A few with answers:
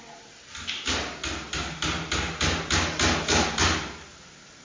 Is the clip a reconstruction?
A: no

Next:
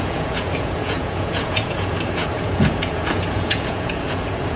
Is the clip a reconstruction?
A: yes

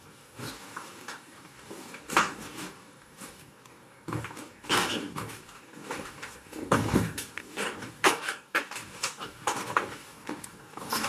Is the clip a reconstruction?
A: yes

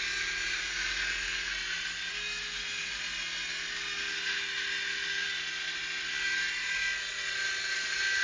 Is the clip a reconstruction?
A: no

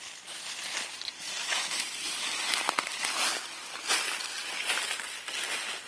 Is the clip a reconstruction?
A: no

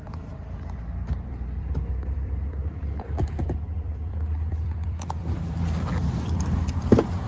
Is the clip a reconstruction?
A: yes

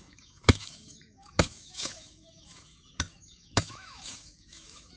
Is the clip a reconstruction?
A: yes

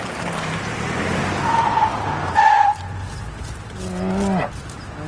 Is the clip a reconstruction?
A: no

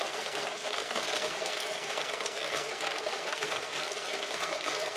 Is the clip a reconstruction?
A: yes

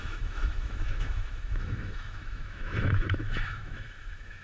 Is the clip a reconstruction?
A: yes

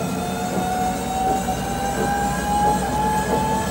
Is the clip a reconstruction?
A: no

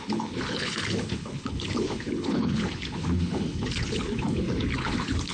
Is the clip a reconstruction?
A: yes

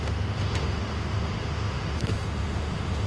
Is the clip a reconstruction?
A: yes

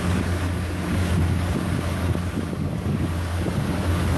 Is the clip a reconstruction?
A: yes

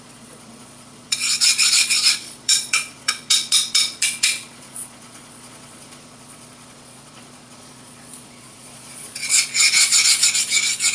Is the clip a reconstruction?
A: yes